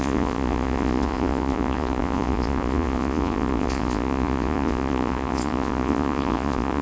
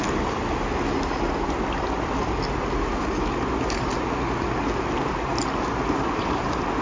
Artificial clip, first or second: first